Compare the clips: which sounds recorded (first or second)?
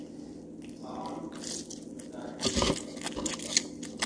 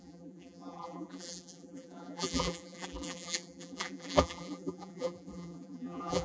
first